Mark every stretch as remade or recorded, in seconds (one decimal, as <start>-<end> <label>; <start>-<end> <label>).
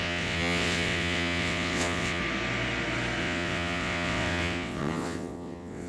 0.0-2.2 remade; 2.2-3.2 recorded; 3.2-5.9 remade